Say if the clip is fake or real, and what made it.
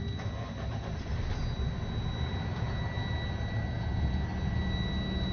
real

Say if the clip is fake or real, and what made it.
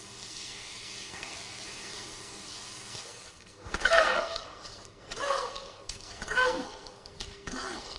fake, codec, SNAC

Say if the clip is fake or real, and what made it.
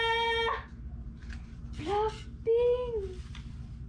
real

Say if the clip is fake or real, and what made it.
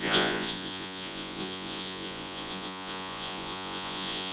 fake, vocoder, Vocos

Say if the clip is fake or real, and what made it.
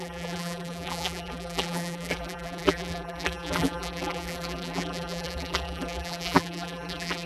fake, vocoder, BigVGAN v2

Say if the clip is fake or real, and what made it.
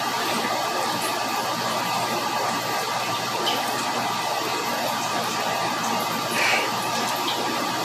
fake, vocoder, BigVGAN v2